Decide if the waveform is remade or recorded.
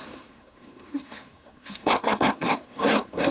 remade